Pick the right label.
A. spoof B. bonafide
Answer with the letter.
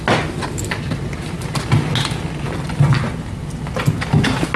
B